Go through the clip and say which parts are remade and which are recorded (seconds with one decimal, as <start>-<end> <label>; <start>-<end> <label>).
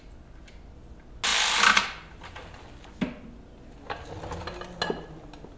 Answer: 0.0-5.6 recorded